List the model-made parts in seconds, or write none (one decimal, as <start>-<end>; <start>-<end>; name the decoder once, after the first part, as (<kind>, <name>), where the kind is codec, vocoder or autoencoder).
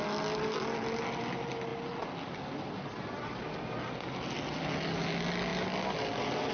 none